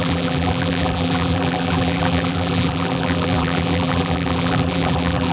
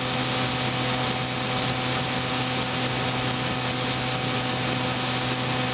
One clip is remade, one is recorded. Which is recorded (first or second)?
second